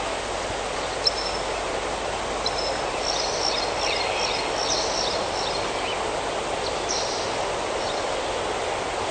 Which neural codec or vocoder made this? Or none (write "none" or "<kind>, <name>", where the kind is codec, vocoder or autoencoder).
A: none